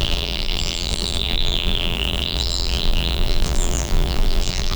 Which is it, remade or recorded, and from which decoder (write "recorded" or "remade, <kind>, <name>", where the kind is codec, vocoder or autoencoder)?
remade, vocoder, BigVGAN v2